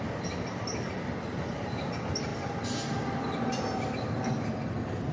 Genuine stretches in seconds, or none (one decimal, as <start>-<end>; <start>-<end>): 0.0-5.1